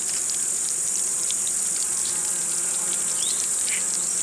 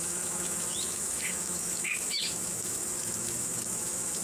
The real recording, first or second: first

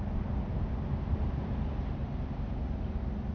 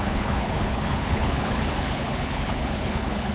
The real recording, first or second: first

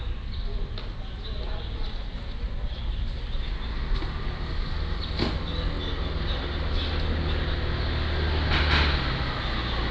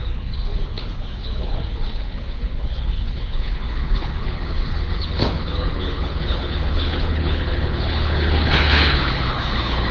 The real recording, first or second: first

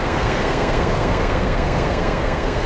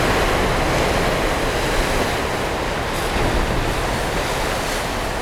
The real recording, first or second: second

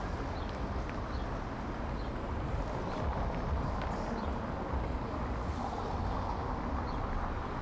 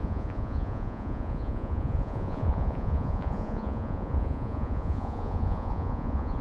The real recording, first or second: first